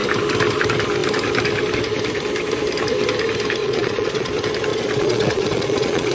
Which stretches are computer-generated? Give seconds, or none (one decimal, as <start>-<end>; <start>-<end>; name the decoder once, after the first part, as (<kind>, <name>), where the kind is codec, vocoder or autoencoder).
3.6-4.3 (vocoder, Vocos); 4.7-6.1